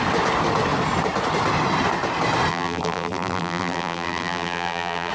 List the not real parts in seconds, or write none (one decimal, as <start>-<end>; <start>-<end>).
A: 2.5-5.1